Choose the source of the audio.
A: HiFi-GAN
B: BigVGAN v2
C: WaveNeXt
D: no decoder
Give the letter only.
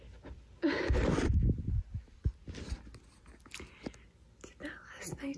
D